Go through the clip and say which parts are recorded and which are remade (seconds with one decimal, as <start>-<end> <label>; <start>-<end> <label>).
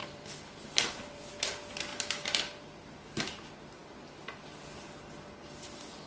0.0-1.3 remade; 1.3-6.1 recorded